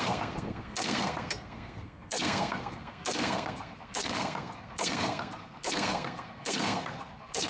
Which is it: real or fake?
fake